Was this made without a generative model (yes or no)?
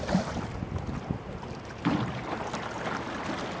yes